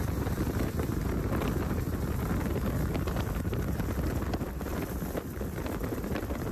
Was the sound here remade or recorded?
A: recorded